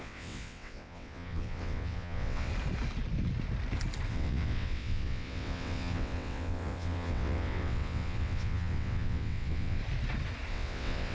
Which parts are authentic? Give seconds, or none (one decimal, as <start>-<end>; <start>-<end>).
2.5-4.1; 9.8-10.5